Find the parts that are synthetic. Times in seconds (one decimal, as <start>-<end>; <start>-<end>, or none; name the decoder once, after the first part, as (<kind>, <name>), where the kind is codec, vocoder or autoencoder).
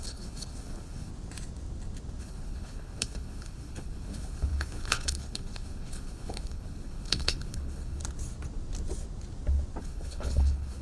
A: 0.0-1.1 (codec, HILCodec); 2.2-8.0; 9.8-10.8